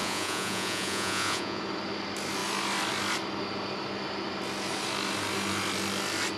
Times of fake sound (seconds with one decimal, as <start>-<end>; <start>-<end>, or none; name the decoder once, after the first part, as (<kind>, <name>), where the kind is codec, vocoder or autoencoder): 0.0-1.6 (vocoder, Vocos)